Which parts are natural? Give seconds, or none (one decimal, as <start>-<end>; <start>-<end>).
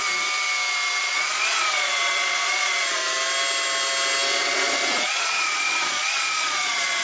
0.0-1.0; 3.0-4.3